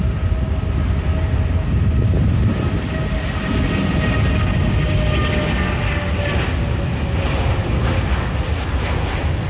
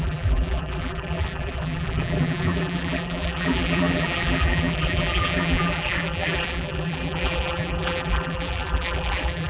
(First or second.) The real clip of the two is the first